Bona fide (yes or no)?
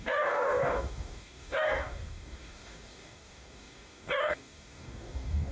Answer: no